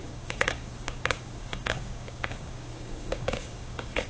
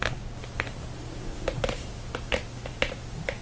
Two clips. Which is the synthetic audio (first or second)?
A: first